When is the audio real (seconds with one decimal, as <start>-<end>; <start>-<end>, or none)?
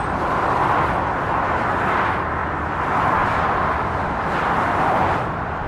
0.0-5.7